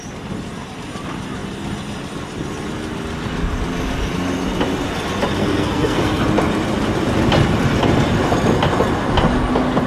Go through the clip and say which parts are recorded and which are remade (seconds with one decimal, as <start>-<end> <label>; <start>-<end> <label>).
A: 0.0-5.4 recorded; 5.4-6.2 remade; 6.2-9.9 recorded